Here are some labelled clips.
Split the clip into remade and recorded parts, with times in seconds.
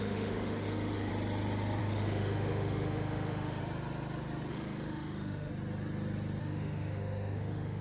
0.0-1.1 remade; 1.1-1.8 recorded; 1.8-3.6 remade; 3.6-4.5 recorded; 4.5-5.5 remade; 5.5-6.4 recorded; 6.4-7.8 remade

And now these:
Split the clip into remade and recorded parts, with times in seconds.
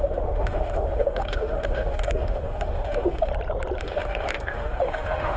0.0-3.3 remade; 3.3-3.8 recorded; 3.8-5.4 remade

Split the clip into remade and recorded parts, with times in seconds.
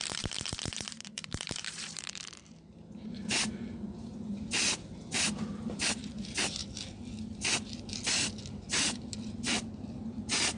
0.0-4.1 remade; 4.1-5.2 recorded; 5.2-6.6 remade; 6.6-7.5 recorded; 7.5-10.6 remade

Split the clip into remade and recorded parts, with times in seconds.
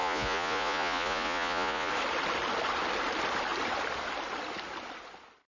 0.0-1.9 remade; 1.9-5.5 recorded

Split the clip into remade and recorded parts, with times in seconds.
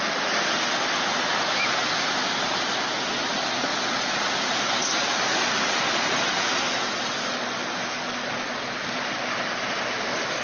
0.0-3.7 recorded; 3.7-4.7 remade; 4.7-10.4 recorded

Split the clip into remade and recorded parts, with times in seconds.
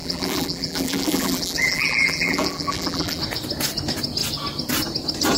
0.0-3.2 remade; 3.2-5.4 recorded